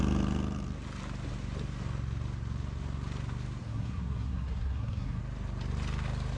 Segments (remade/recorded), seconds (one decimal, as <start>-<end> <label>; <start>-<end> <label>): 0.0-3.6 recorded; 3.6-5.2 remade; 5.2-6.4 recorded